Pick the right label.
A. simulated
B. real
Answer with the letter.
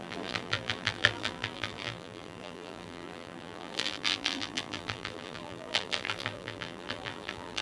A